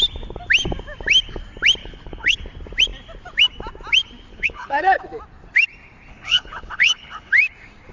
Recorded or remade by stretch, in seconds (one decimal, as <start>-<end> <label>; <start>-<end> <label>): 0.0-1.8 recorded; 1.8-2.4 remade; 2.4-4.3 recorded; 4.3-5.0 remade; 5.0-6.1 recorded; 6.1-7.3 remade; 7.3-7.9 recorded